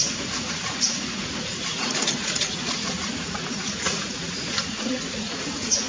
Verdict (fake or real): fake